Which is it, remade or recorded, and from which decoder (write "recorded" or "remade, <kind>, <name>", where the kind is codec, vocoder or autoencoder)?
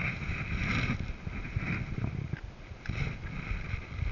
recorded